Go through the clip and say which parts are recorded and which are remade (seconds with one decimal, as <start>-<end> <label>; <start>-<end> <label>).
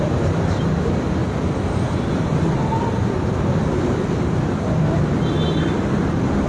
0.0-1.2 remade; 1.2-3.4 recorded; 3.4-6.5 remade